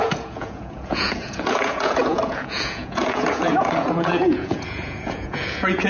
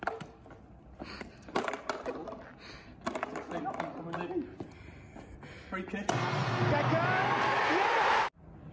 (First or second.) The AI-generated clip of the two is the first